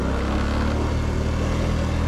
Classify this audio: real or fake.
real